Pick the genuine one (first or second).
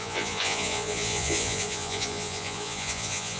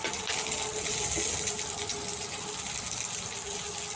second